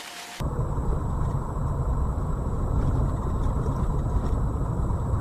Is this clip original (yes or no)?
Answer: no